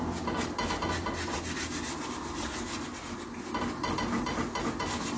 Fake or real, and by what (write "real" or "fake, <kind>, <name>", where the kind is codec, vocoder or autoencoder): real